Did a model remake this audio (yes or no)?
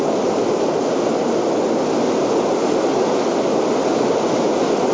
no